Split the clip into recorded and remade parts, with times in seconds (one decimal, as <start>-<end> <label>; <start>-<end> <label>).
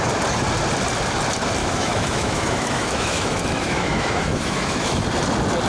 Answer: 0.0-1.6 recorded; 1.6-5.0 remade; 5.0-5.7 recorded